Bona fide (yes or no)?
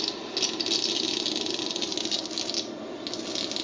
yes